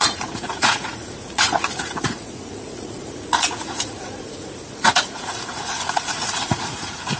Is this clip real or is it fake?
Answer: fake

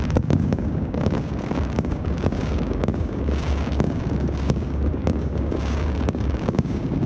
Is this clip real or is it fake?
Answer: fake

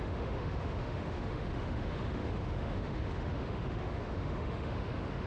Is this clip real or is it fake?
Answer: fake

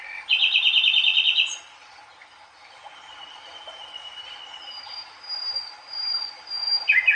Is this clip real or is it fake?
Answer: real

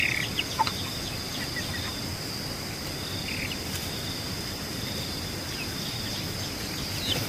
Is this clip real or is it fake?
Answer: real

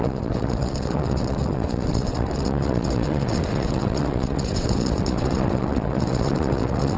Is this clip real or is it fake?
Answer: fake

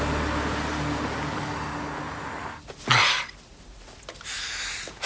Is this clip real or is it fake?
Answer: real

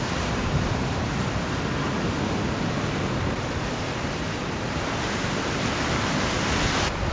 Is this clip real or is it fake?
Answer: real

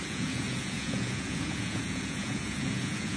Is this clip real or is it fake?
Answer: fake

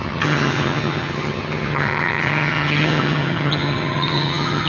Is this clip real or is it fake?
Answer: fake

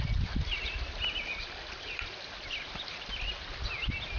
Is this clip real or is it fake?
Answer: real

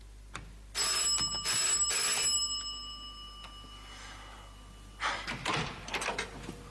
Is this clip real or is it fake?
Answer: real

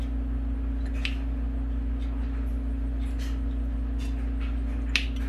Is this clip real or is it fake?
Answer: real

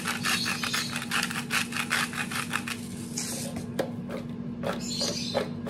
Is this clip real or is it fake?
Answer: real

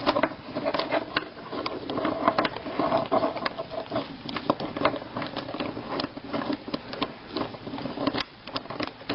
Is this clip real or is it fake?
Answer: real